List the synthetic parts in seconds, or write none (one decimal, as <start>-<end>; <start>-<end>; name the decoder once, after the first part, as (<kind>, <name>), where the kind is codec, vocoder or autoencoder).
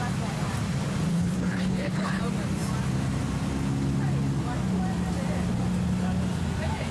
1.1-2.2 (codec, HILCodec)